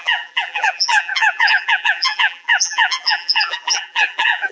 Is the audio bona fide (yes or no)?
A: no